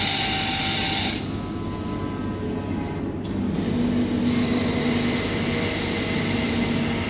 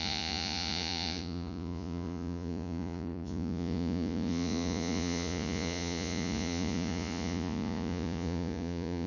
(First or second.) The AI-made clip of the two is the second